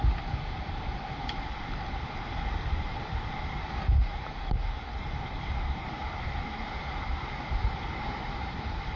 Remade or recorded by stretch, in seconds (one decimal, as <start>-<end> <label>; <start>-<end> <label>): 0.0-4.0 remade; 4.0-5.0 recorded; 5.0-6.0 remade; 6.0-7.5 recorded; 7.5-9.0 remade